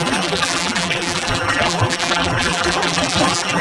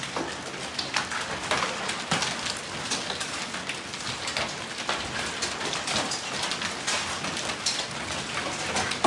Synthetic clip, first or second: first